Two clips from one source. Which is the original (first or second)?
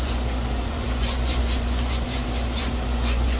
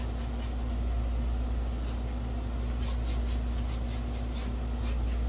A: second